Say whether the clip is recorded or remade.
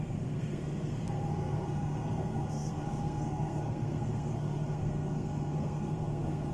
remade